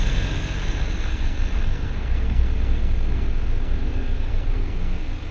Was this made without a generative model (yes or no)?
no